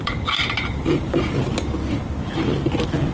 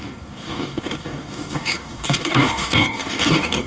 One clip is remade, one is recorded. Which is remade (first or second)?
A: second